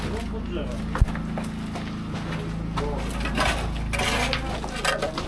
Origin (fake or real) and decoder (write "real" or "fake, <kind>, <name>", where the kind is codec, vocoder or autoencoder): real